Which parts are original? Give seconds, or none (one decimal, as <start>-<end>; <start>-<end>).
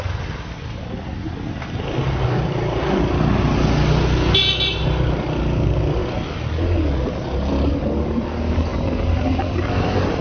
0.0-10.2